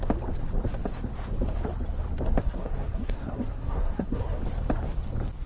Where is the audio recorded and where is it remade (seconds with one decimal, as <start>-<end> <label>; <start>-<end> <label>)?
0.0-2.4 recorded; 2.4-4.4 remade; 4.4-5.5 recorded